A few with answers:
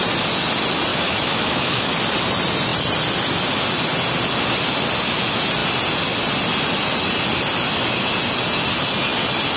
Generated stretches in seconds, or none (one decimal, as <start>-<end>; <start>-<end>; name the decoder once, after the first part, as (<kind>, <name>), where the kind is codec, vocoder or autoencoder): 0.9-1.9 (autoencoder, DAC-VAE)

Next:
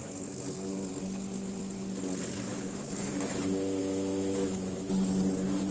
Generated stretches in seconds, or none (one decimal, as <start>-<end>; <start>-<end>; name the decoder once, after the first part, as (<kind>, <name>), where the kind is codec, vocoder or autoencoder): 2.5-3.4 (autoencoder, DAC-VAE); 3.8-4.9

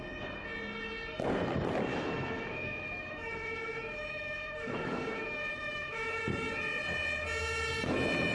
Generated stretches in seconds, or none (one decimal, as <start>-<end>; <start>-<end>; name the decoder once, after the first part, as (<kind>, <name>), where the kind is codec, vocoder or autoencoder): 1.9-6.2 (autoencoder, DAC-VAE)

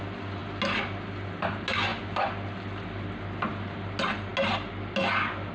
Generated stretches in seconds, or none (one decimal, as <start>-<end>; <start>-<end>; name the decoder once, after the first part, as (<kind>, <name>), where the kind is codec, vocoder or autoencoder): none